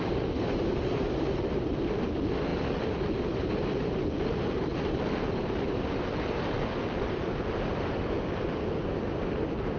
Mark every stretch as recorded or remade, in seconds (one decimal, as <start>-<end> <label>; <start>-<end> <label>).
0.0-9.8 recorded